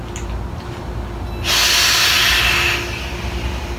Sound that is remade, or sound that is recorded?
recorded